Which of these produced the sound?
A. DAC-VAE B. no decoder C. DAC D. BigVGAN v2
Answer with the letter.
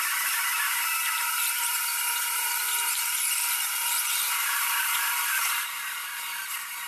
D